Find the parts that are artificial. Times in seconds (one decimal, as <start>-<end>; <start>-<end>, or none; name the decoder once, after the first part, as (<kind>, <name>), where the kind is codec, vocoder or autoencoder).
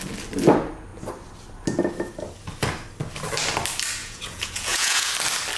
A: 4.0-5.1 (vocoder, Vocos)